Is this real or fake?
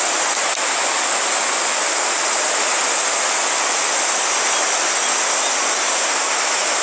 real